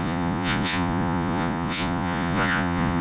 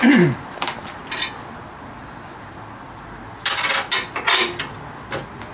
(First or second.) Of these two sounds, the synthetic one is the first